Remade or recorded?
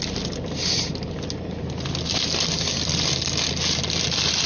recorded